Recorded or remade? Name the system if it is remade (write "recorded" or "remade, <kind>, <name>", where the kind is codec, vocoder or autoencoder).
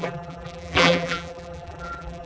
remade, vocoder, BigVGAN v2